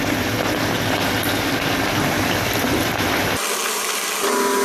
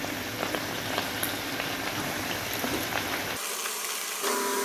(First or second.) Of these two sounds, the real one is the first